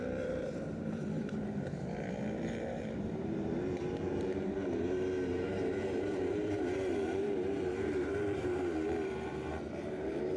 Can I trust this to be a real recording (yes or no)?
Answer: no